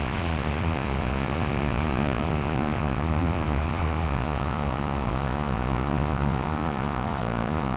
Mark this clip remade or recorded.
remade